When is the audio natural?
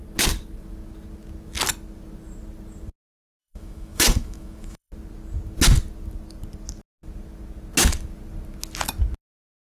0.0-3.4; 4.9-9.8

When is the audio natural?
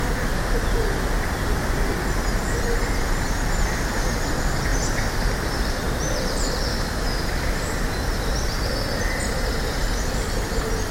0.0-6.7; 7.2-10.9